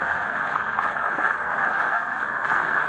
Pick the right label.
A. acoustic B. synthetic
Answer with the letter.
B